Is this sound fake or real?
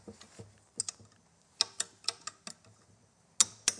real